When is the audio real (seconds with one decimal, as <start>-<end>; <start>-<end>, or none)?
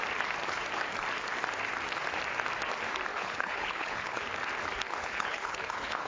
0.0-3.1; 4.2-5.0